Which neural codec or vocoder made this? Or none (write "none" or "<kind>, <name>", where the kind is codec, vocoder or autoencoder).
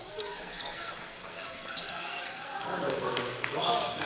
codec, SNAC